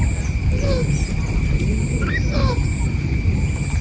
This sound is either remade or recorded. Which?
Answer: recorded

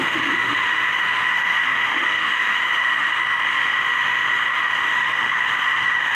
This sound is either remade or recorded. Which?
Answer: remade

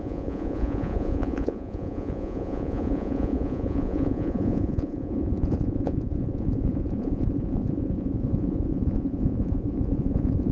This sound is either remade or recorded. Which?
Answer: remade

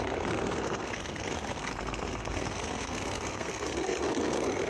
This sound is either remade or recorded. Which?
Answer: remade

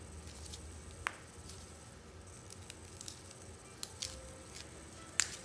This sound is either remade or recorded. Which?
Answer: recorded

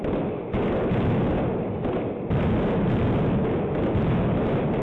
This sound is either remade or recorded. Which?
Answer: recorded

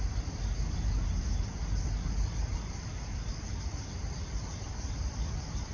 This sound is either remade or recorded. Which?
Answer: recorded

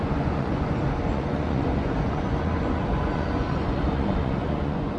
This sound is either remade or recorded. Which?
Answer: remade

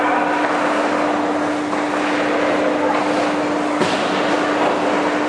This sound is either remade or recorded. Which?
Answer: recorded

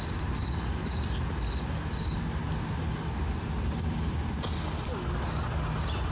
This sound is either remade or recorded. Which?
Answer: recorded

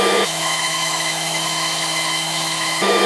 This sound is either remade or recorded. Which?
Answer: remade